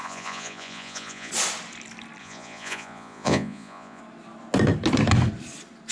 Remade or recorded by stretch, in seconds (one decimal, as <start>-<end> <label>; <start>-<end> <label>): 0.0-1.3 remade; 1.3-2.2 recorded; 2.2-4.0 remade; 4.0-5.9 recorded